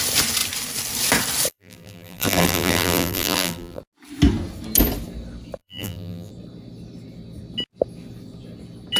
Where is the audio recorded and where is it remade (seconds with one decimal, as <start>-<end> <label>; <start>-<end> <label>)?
0.0-1.5 recorded; 1.5-3.8 remade; 3.8-5.6 recorded; 5.6-6.3 remade; 6.3-9.0 recorded